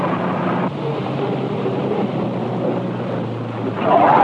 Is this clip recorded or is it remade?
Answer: recorded